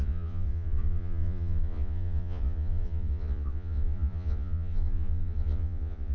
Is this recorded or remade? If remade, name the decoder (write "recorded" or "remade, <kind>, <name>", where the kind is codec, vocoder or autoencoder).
remade, vocoder, Vocos